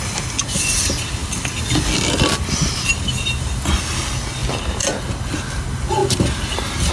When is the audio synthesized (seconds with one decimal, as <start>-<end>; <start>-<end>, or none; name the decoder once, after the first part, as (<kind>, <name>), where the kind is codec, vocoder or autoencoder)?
none